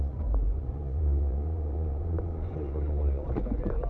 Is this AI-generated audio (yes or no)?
yes